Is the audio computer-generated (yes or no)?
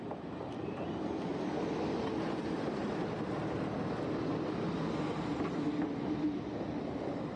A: no